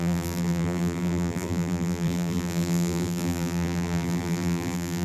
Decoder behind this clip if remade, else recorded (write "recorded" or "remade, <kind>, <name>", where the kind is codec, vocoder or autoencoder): remade, vocoder, BigVGAN v2